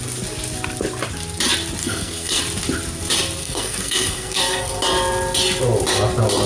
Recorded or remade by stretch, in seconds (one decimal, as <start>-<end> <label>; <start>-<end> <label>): 0.0-1.8 recorded; 1.8-2.4 remade; 2.4-3.4 recorded; 3.4-4.8 remade; 4.8-6.5 recorded